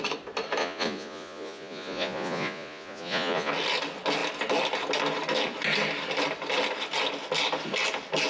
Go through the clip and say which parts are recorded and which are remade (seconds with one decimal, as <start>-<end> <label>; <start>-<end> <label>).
0.0-0.6 recorded; 0.6-3.5 remade; 3.5-8.3 recorded